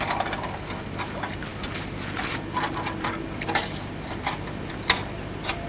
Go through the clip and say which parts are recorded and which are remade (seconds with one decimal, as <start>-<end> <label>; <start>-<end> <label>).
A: 0.0-5.7 recorded